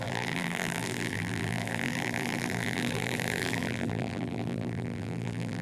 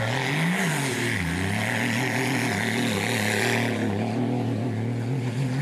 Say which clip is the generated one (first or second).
first